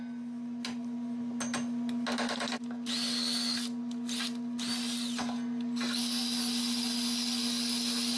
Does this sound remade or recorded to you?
recorded